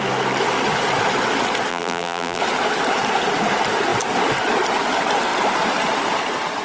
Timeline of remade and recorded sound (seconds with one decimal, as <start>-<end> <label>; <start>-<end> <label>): 0.0-1.7 recorded; 1.7-2.4 remade; 2.4-6.6 recorded